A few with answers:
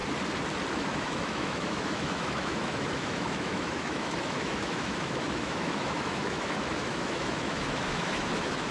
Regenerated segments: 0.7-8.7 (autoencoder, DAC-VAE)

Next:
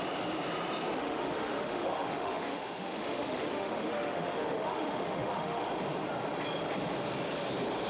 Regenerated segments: 1.0-5.7 (autoencoder, DAC-VAE)